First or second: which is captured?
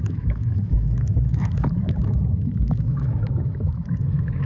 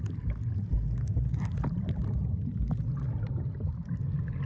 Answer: second